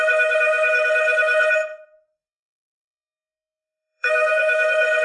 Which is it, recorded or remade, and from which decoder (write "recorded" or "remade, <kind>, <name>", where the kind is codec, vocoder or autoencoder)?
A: remade, codec, SNAC